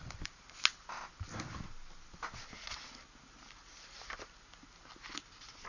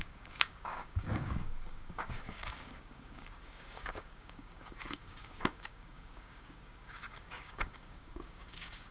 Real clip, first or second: first